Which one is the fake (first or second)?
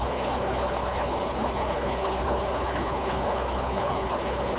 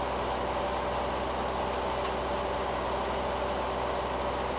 first